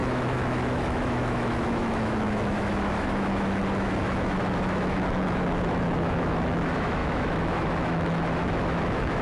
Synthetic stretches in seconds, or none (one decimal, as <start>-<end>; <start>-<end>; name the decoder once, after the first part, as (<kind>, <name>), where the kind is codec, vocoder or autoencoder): 0.0-9.2 (autoencoder, DAC-VAE)